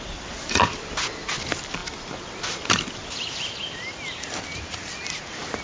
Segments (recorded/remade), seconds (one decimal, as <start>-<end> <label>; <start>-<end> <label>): 0.0-5.6 recorded